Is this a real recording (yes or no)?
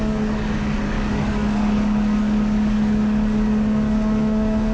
no